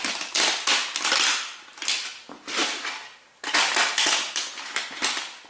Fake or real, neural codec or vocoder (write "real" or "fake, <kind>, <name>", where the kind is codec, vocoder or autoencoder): real